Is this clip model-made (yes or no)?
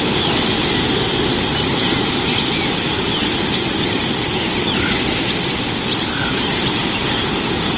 no